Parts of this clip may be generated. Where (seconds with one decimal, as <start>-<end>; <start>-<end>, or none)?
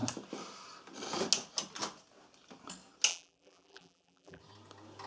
3.1-4.4